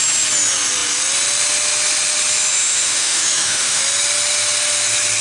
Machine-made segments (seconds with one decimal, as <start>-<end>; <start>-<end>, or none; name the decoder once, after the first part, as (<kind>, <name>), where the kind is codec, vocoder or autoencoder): 2.5-3.8 (autoencoder, DAC-VAE)